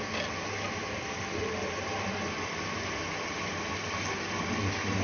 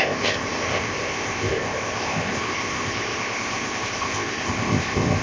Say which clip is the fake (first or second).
second